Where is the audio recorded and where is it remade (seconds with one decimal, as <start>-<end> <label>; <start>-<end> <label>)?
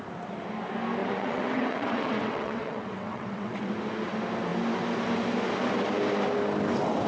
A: 0.0-1.0 recorded; 1.0-3.7 remade; 3.7-7.1 recorded